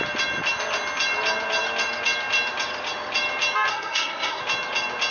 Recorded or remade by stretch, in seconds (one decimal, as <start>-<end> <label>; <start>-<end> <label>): 0.0-3.7 recorded; 3.7-4.4 remade; 4.4-5.1 recorded